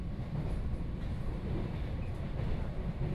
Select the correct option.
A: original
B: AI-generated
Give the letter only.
B